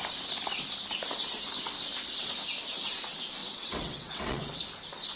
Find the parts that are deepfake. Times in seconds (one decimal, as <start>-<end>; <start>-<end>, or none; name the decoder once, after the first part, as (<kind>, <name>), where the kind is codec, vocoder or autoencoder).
3.4-4.6 (vocoder, WaveNeXt)